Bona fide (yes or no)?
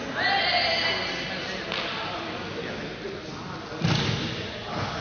yes